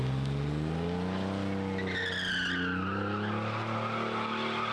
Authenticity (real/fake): real